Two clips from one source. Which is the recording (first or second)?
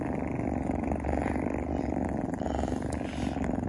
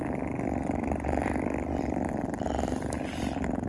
first